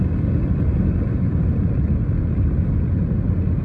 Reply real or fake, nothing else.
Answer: real